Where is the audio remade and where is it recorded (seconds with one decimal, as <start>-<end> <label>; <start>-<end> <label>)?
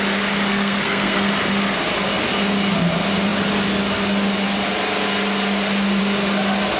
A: 0.0-0.5 recorded; 0.5-1.3 remade; 1.3-6.8 recorded